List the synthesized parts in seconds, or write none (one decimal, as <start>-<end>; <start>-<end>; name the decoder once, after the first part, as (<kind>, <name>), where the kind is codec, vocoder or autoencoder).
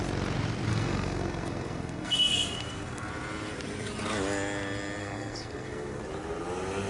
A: 0.7-3.1 (codec, SNAC); 5.0-6.0